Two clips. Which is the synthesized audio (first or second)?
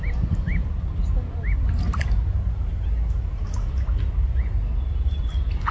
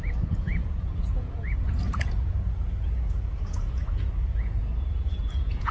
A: second